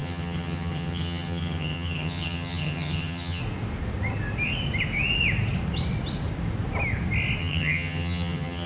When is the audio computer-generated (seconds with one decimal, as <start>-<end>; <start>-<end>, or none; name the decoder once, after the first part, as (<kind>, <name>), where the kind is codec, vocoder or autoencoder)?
0.0-3.4 (vocoder, HiFi-GAN); 7.4-8.7